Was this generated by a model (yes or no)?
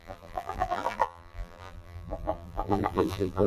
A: yes